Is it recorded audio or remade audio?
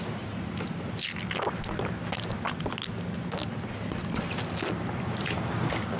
recorded